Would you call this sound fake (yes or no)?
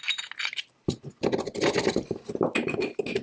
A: no